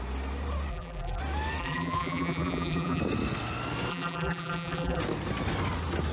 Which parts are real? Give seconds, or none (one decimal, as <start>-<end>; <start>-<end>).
0.0-0.7; 1.2-1.6; 3.0-3.9; 5.0-6.1